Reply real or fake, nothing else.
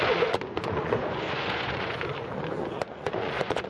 fake